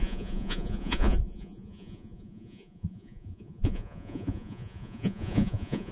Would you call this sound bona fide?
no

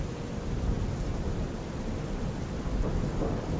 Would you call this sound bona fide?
yes